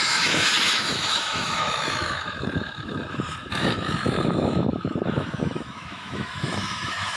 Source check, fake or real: fake